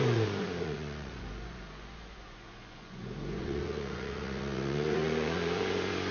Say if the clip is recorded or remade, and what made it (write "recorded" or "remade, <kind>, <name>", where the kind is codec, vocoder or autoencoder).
remade, vocoder, Vocos